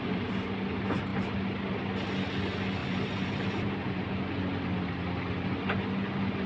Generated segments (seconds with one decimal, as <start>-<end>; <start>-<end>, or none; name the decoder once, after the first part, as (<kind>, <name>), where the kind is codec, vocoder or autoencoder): 2.8-4.0 (vocoder, BigVGAN v2)